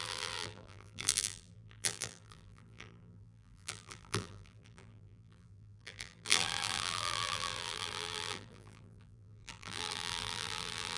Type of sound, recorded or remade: remade